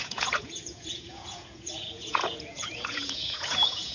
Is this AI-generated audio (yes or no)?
yes